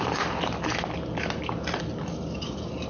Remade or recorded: recorded